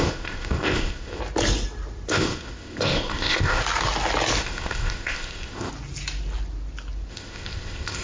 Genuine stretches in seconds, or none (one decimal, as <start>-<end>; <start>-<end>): 1.2-2.1; 3.6-4.4; 5.7-7.1